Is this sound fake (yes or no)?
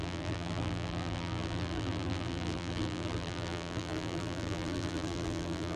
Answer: yes